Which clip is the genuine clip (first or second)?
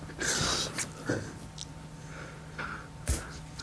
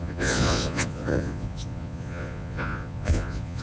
first